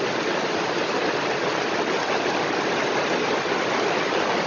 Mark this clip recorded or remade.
recorded